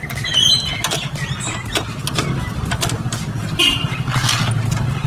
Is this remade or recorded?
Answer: recorded